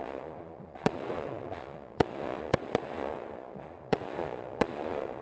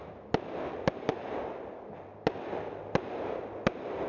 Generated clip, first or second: first